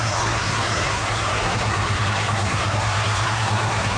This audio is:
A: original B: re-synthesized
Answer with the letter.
B